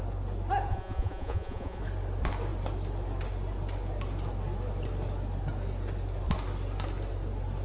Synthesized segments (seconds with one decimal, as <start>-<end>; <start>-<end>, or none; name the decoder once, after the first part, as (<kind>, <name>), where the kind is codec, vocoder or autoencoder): 0.7-1.8 (vocoder, Vocos)